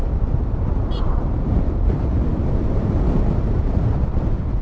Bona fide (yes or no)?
yes